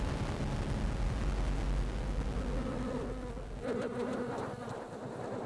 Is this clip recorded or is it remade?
recorded